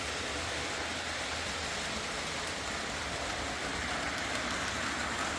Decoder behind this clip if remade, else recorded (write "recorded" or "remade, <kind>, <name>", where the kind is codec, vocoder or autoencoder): recorded